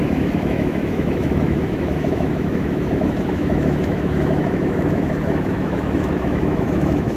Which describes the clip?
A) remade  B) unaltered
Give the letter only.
A